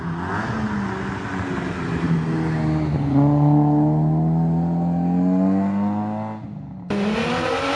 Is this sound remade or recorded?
recorded